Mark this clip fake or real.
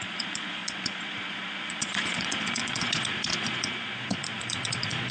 fake